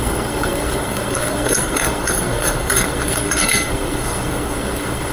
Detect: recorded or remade remade